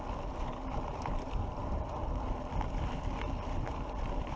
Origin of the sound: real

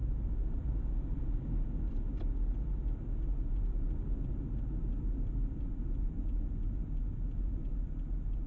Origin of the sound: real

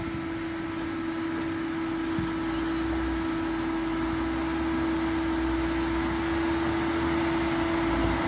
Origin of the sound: real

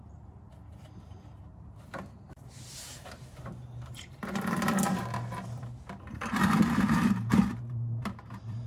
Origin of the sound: fake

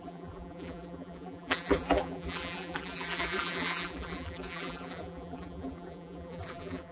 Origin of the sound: fake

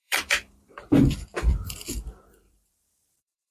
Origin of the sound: fake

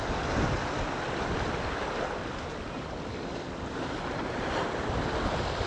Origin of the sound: real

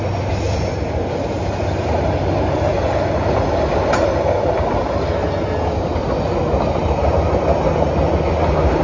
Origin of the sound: real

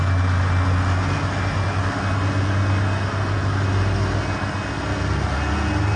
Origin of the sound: real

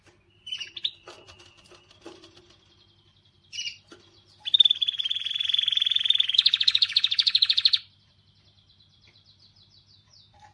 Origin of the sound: fake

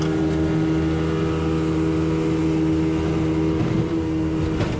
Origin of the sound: real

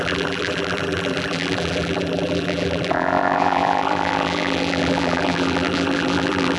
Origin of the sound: fake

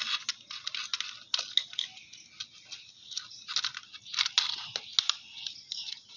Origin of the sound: real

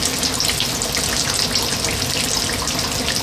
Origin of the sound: real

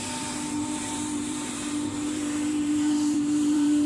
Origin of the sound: fake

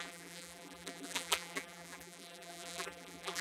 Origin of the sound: fake